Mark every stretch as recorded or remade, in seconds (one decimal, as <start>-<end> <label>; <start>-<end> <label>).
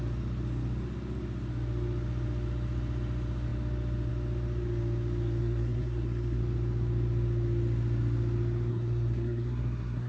0.0-5.4 recorded; 5.4-6.4 remade; 6.4-8.7 recorded; 8.7-10.1 remade